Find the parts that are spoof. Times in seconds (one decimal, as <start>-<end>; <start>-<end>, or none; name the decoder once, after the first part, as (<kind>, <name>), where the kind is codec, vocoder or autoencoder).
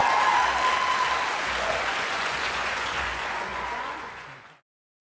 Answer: 1.3-5.0 (vocoder, Vocos)